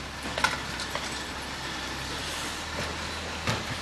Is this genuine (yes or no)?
yes